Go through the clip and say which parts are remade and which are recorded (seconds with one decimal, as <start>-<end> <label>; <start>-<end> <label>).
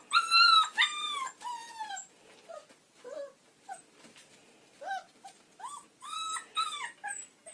0.0-7.5 recorded